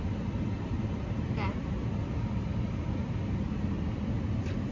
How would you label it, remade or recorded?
recorded